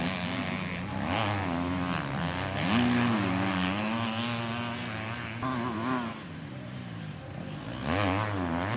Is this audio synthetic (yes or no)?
no